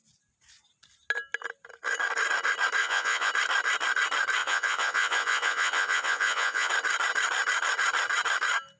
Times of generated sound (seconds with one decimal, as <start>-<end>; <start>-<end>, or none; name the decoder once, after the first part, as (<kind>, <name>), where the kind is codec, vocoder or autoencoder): 2.8-3.3 (vocoder, Vocos); 4.4-6.7